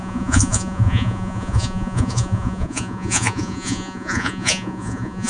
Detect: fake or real fake